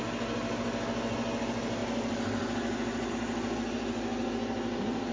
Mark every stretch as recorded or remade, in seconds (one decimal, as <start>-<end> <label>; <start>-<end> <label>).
0.0-5.1 recorded